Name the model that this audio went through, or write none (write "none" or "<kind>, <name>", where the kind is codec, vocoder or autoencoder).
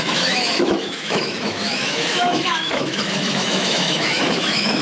autoencoder, DAC-VAE